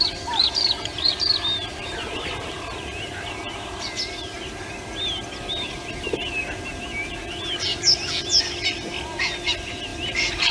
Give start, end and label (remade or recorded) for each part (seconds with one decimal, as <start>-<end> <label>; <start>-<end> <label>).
0.0-10.5 recorded